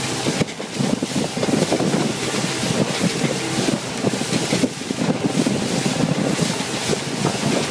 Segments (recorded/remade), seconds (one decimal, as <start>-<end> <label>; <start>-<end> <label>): 0.0-6.9 recorded; 6.9-7.7 remade